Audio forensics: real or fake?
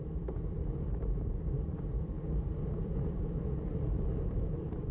real